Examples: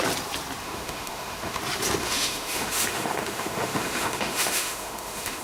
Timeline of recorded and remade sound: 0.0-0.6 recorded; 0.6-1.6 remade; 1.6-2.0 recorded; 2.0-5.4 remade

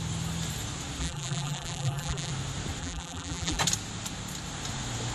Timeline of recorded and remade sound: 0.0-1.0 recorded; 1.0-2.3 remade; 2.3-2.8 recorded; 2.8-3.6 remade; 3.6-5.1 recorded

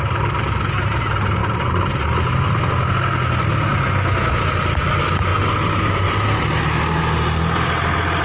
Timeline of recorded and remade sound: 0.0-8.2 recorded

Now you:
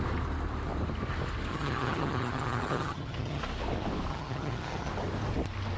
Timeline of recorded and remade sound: 0.0-1.5 recorded; 1.5-3.4 remade; 3.4-4.1 recorded; 4.1-4.9 remade; 4.9-5.8 recorded

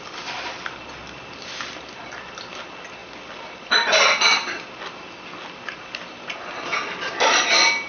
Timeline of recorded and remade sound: 0.0-7.9 recorded

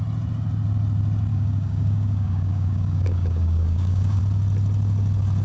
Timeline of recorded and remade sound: 0.0-1.3 recorded; 1.3-4.2 remade; 4.2-5.4 recorded